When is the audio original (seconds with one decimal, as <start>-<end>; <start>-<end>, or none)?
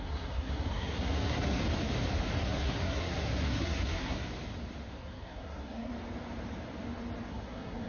1.6-2.4; 4.3-4.9; 5.9-7.3